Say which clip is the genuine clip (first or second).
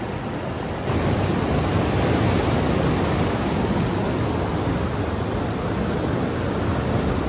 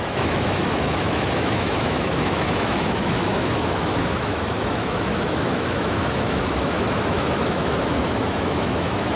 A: first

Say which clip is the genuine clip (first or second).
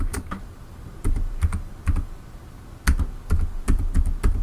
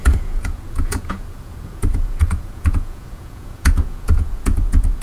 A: first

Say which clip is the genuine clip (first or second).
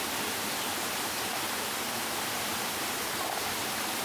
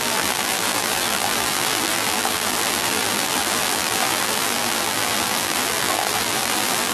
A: first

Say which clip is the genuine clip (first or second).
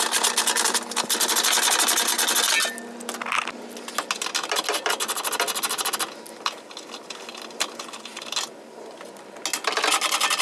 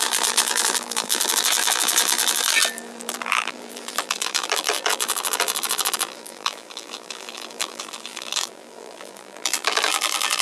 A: first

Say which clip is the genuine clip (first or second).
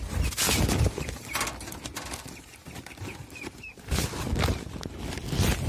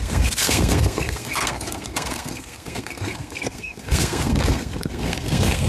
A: first